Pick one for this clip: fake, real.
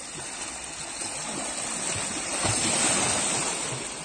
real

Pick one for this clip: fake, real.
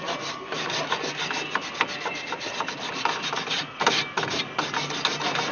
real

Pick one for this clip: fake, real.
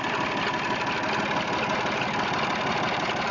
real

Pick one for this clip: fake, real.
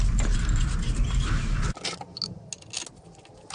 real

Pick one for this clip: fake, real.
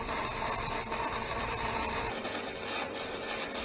fake